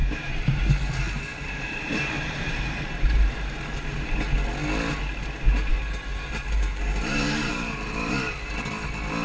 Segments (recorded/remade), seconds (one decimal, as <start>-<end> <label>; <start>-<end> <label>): 0.0-0.6 remade; 0.6-1.3 recorded; 1.3-3.5 remade; 3.5-5.7 recorded; 5.7-8.1 remade; 8.1-9.2 recorded